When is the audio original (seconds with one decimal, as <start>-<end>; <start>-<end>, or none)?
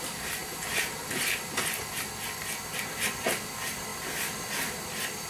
0.4-3.2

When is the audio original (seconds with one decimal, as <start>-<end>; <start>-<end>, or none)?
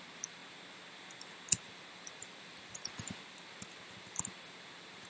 0.4-1.6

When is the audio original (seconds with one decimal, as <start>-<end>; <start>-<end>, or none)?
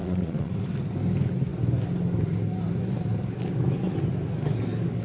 0.5-5.0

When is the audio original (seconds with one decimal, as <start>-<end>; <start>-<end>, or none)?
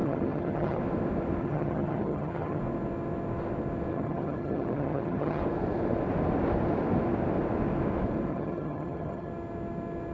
0.8-1.4; 2.6-3.9; 5.4-8.3; 9.3-10.1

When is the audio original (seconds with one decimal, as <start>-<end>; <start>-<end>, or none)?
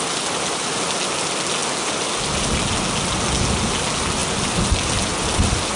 0.0-5.8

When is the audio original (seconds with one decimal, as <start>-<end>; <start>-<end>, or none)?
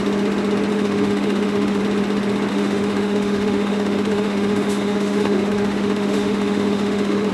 0.0-0.7; 1.8-2.5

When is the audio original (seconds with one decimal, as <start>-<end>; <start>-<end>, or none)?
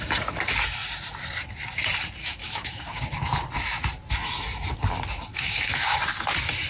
0.0-2.2; 3.0-5.3; 6.0-6.7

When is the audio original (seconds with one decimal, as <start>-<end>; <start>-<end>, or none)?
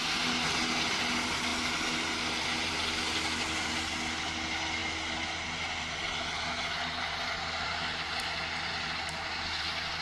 0.0-10.0